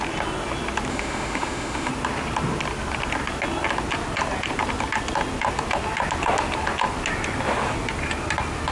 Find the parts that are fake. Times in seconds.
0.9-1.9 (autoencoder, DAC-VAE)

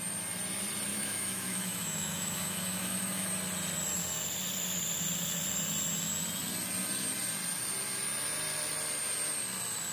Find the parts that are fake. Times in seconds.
0.9-3.3 (autoencoder, DAC-VAE)

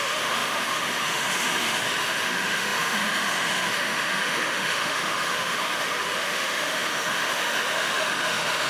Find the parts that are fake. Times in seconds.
0.0-8.7 (autoencoder, DAC-VAE)

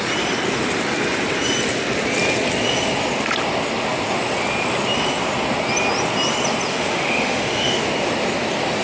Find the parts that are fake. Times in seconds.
6.7-7.8 (autoencoder, DAC-VAE)

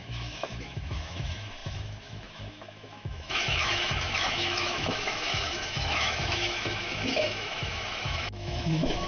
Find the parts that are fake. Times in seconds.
0.0-9.1 (autoencoder, DAC-VAE)

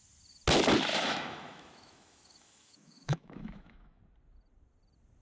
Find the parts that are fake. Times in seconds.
0.9-4.0 (autoencoder, DAC-VAE)